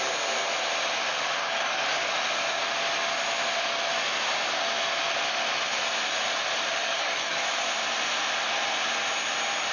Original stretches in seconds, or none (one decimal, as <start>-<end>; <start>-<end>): 0.0-1.4; 2.1-6.8; 7.4-9.7